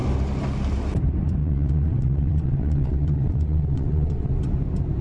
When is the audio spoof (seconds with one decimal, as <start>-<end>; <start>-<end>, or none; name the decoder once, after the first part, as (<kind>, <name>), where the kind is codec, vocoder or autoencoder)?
1.4-4.3 (vocoder, WaveNeXt)